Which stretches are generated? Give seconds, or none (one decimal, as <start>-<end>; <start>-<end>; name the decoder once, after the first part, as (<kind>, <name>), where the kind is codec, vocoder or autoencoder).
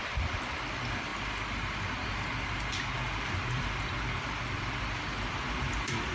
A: 0.0-1.1 (vocoder, BigVGAN v2); 3.5-6.1